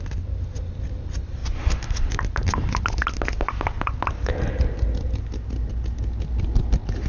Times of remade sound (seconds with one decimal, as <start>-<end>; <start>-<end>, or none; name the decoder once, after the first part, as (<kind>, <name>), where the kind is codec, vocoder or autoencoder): none